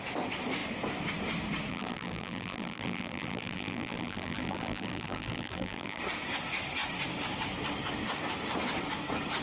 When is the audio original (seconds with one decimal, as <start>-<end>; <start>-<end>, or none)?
0.0-1.7; 6.0-9.4